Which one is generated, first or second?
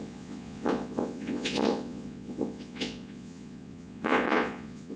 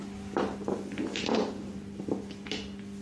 first